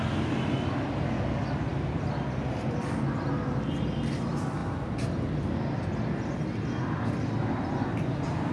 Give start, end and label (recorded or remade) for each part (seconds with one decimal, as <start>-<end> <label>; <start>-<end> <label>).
0.0-8.5 recorded